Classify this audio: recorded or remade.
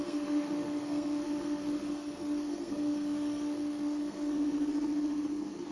remade